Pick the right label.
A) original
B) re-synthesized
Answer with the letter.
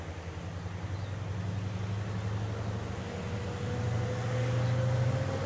A